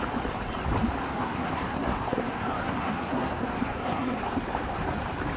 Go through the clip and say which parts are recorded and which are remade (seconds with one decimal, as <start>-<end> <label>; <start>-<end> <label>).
0.0-1.0 recorded; 1.0-4.2 remade; 4.2-5.4 recorded